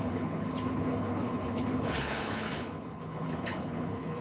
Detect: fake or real fake